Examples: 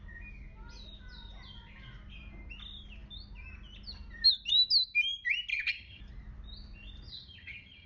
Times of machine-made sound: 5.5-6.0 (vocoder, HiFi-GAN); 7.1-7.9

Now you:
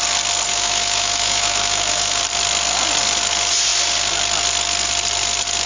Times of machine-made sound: 0.5-2.2 (autoencoder, DAC-VAE)

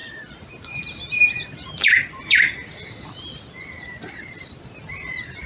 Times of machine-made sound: none